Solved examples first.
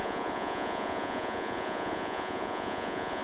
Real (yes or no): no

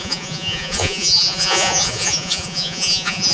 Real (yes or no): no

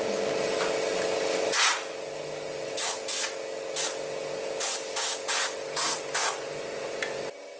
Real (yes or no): yes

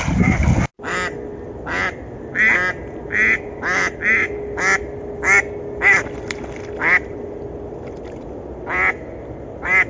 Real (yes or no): yes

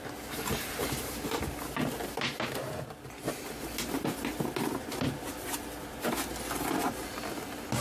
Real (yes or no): yes